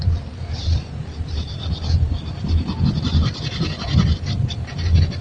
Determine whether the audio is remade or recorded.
recorded